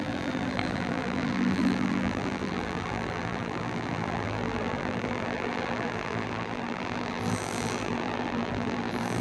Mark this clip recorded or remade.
remade